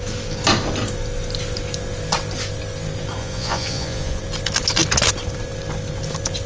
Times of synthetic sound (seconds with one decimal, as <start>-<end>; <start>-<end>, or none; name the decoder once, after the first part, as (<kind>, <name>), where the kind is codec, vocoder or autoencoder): 3.2-4.2 (vocoder, Vocos)